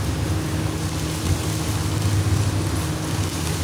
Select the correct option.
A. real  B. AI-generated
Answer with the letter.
A